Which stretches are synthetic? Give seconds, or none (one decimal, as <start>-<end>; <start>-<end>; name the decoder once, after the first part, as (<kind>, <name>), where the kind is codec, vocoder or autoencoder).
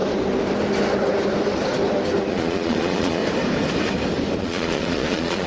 2.3-3.2 (vocoder, Vocos); 4.4-5.5